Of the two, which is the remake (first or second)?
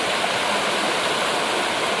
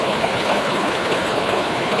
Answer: second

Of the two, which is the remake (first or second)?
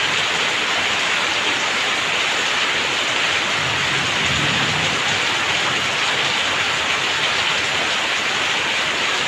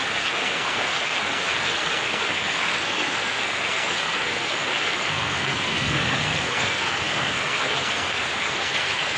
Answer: second